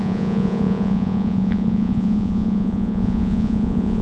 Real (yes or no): no